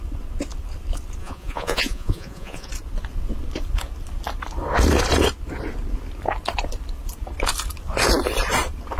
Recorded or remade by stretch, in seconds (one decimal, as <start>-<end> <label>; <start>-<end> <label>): 0.0-1.2 recorded; 1.2-2.7 remade; 2.7-9.0 recorded